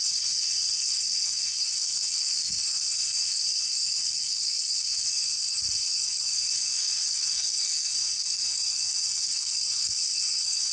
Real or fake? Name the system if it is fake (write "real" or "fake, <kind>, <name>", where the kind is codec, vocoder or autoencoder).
fake, codec, SNAC